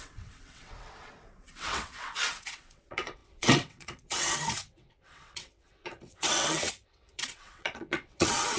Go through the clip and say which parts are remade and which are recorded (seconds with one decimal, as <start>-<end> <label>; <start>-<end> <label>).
0.0-8.6 remade